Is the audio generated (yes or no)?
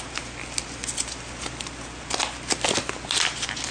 no